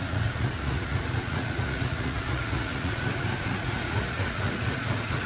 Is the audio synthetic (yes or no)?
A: yes